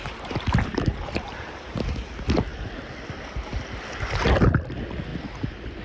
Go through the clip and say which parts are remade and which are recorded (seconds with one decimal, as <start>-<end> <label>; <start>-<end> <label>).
0.0-2.1 remade; 2.1-5.8 recorded